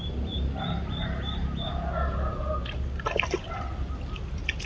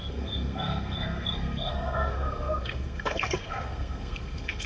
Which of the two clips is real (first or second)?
first